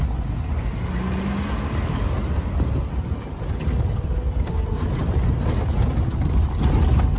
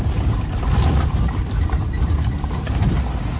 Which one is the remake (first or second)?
second